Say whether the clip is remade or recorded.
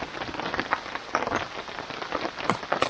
recorded